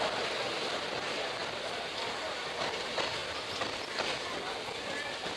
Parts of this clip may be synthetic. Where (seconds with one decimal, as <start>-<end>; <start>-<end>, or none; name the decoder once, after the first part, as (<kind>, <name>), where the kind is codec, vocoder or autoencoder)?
none